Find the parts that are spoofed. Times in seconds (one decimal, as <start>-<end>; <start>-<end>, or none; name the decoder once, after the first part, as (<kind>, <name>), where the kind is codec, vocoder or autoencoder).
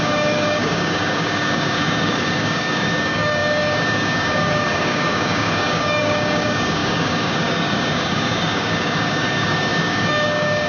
0.0-10.7 (codec, DAC)